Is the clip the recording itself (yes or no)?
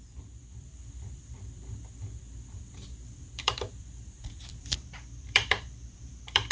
no